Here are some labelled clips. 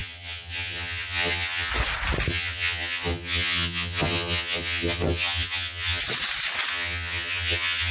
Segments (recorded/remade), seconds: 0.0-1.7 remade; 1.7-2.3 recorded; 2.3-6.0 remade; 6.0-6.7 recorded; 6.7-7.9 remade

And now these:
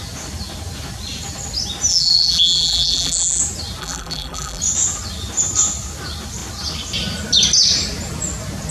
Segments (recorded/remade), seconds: 0.0-1.9 recorded; 1.9-3.4 remade; 3.4-3.8 recorded; 3.8-4.6 remade; 4.6-8.7 recorded